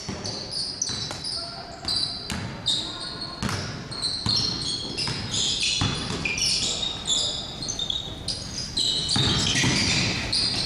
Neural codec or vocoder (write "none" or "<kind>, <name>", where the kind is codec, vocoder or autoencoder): none